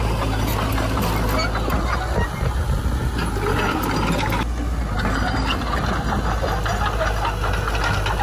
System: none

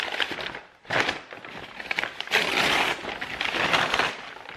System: vocoder, BigVGAN v2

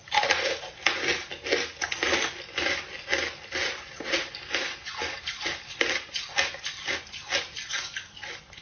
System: none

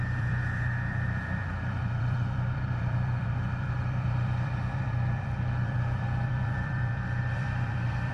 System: vocoder, BigVGAN v2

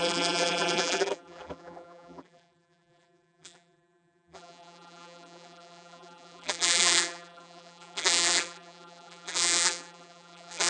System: vocoder, BigVGAN v2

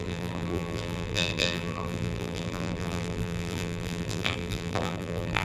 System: vocoder, BigVGAN v2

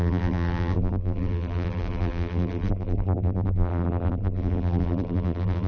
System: vocoder, BigVGAN v2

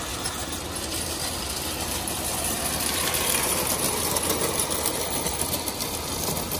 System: none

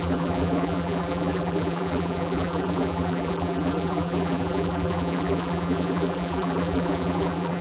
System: vocoder, BigVGAN v2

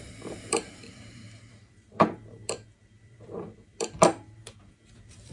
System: vocoder, BigVGAN v2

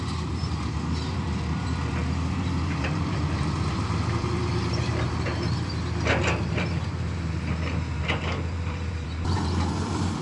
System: vocoder, BigVGAN v2